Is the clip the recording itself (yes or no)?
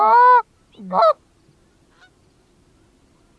yes